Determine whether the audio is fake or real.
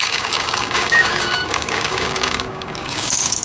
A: fake